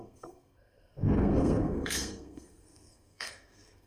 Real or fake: fake